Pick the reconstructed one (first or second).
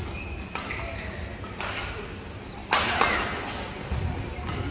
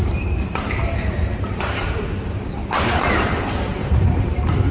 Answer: second